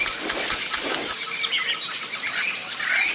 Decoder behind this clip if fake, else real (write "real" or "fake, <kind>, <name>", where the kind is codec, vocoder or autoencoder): real